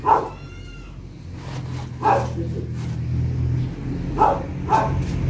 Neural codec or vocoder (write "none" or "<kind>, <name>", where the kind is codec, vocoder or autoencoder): none